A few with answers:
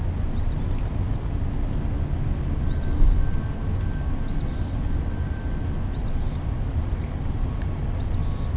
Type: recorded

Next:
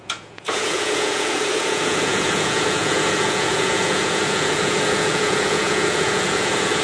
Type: remade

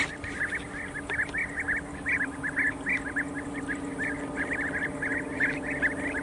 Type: recorded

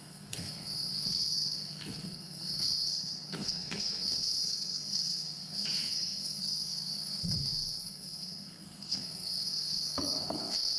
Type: remade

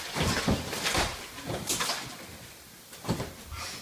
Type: recorded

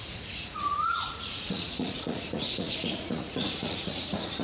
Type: remade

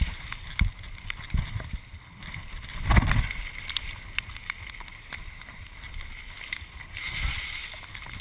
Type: recorded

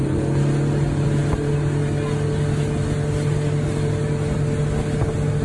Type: recorded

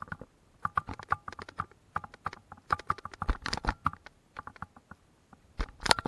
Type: recorded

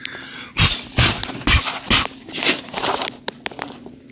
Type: recorded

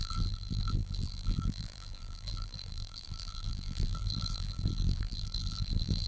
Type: remade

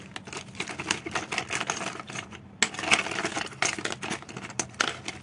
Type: recorded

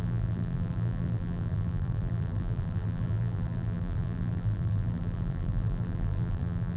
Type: remade